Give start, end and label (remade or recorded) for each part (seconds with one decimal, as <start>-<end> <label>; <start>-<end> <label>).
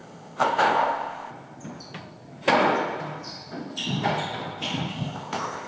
0.0-1.3 remade; 1.3-4.9 recorded; 4.9-5.7 remade